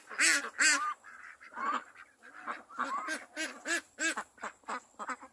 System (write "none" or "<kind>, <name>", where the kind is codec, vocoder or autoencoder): none